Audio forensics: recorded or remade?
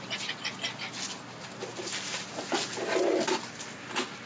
recorded